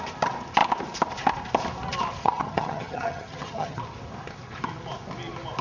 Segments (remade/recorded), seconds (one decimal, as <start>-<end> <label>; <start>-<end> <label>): 0.0-2.2 recorded; 2.2-3.8 remade; 3.8-5.6 recorded